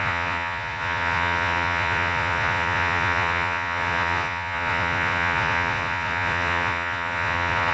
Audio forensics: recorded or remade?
remade